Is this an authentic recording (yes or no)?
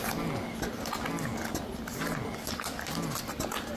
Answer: yes